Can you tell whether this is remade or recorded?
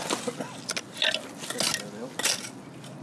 recorded